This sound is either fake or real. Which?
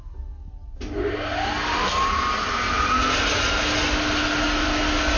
real